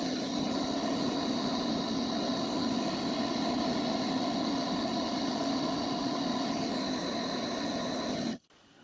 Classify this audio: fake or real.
real